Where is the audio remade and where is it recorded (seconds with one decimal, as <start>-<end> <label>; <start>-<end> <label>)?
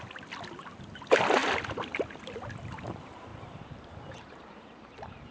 0.0-3.3 recorded; 3.3-5.3 remade